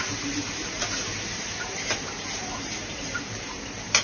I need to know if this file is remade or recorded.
remade